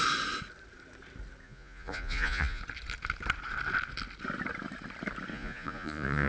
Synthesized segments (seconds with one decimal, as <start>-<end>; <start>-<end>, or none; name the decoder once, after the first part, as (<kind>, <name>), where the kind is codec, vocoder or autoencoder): 1.4-2.6 (vocoder, Vocos); 5.3-6.3

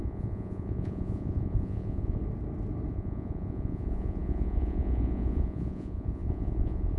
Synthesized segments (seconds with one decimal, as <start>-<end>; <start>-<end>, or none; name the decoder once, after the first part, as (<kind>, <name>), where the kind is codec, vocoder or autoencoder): 0.0-2.2 (vocoder, Vocos); 2.9-7.0